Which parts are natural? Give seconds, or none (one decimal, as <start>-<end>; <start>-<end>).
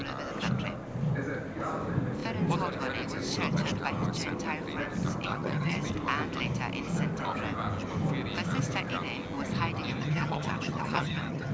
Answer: 0.0-5.3; 5.9-9.9